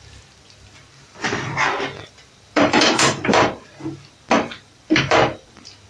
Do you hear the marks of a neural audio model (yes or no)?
yes